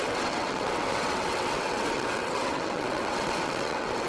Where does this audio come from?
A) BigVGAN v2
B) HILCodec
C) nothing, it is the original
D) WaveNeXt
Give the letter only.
D